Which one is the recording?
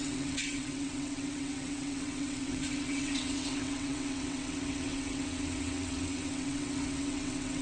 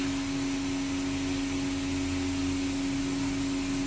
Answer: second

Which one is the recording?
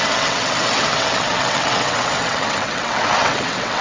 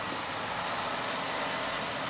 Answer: second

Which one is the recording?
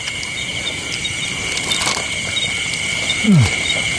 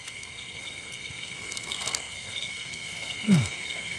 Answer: first